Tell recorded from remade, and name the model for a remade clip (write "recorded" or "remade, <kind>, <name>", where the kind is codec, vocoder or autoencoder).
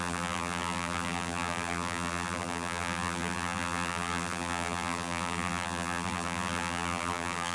remade, vocoder, BigVGAN v2